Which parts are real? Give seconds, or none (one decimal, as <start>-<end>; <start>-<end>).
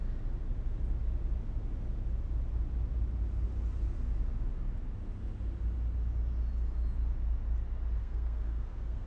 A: 0.0-8.0